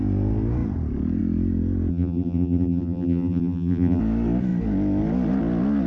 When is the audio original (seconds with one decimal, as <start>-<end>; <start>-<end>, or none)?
0.0-1.9; 4.0-5.9